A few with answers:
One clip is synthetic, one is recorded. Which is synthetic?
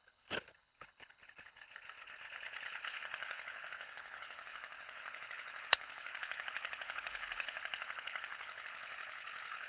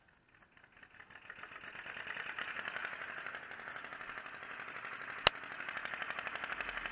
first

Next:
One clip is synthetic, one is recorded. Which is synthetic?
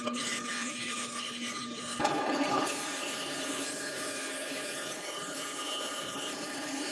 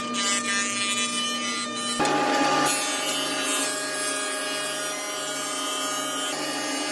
first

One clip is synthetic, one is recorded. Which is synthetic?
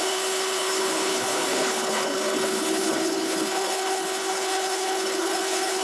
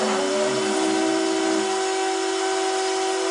first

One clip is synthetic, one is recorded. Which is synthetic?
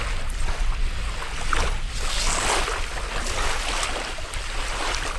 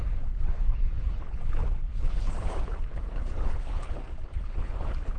second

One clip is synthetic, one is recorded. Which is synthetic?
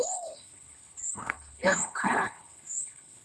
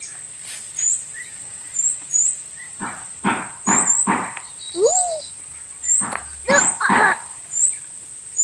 first